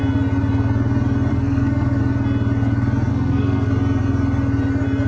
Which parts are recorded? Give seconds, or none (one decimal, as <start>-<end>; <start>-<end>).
0.0-1.3; 2.0-3.1; 3.7-5.1